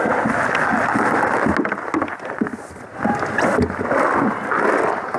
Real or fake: real